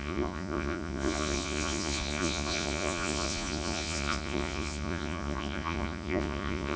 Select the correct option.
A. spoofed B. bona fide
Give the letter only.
A